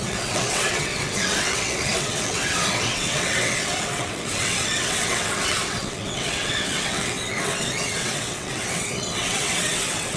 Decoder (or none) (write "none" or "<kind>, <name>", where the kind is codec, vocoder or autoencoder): vocoder, WaveNeXt